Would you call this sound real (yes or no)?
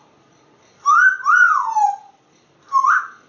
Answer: no